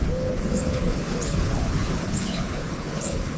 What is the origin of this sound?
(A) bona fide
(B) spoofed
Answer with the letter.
B